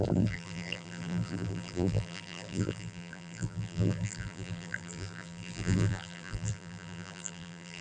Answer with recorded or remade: remade